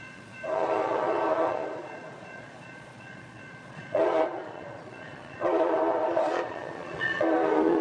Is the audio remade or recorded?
remade